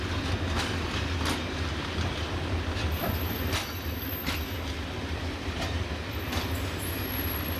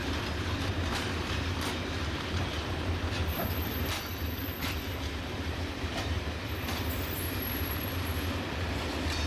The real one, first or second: first